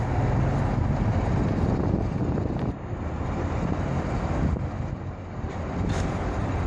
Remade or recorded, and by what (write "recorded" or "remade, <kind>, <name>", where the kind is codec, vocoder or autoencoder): recorded